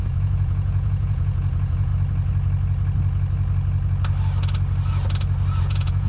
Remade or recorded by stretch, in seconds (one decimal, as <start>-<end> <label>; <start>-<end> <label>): 0.0-1.9 remade; 1.9-5.6 recorded; 5.6-6.1 remade